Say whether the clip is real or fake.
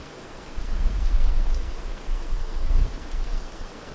fake